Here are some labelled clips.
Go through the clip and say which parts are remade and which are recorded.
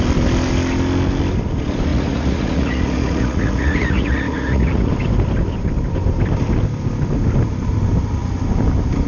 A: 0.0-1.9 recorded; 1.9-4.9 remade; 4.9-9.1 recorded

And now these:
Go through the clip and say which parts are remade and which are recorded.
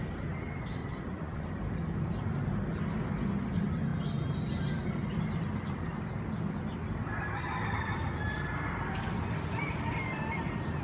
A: 0.0-0.8 recorded; 0.8-1.4 remade; 1.4-10.8 recorded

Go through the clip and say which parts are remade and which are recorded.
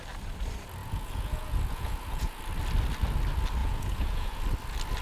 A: 0.0-0.8 recorded; 0.8-2.4 remade; 2.4-3.6 recorded; 3.6-4.4 remade; 4.4-5.0 recorded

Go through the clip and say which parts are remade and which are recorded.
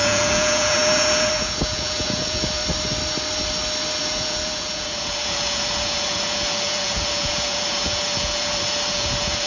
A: 0.0-2.6 remade; 2.6-4.0 recorded; 4.0-9.5 remade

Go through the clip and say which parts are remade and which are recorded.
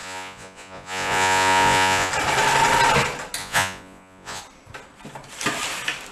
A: 0.0-2.1 remade; 2.1-3.4 recorded; 3.4-4.4 remade; 4.4-6.1 recorded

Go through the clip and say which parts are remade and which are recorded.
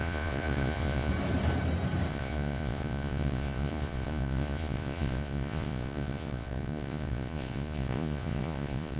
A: 0.0-1.1 remade; 1.1-2.1 recorded; 2.1-9.0 remade